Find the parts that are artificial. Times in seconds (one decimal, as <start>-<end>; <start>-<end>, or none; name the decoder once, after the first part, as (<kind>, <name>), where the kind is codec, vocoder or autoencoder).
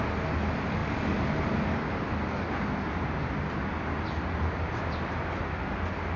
none